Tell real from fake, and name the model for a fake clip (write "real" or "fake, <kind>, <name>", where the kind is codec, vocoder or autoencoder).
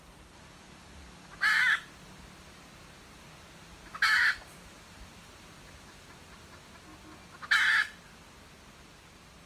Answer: real